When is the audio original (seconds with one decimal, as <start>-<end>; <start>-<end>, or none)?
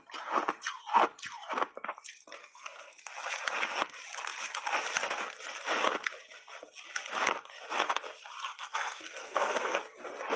0.0-2.4; 3.0-8.6; 9.8-10.4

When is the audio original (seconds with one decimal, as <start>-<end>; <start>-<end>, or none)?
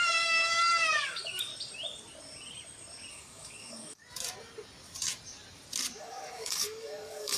1.5-3.1; 4.0-6.0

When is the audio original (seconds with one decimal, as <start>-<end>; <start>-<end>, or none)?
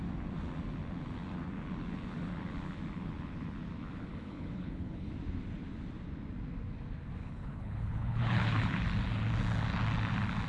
0.0-4.1; 5.1-7.2; 8.8-10.5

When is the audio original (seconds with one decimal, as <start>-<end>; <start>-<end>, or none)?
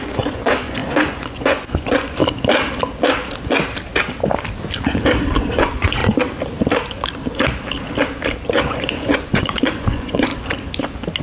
2.2-5.4; 6.0-8.7; 10.3-11.2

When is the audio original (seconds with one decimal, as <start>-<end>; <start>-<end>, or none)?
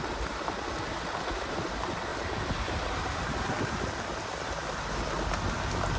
0.0-2.1; 3.0-6.0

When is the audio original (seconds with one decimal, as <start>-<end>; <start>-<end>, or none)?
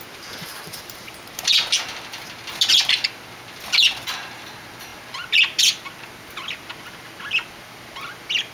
0.0-0.5; 1.1-8.5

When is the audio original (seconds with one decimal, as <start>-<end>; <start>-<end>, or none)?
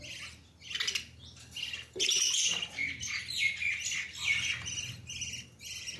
0.0-6.0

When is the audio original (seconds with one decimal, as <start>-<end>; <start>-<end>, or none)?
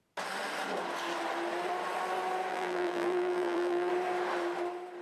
0.0-2.5; 3.9-5.0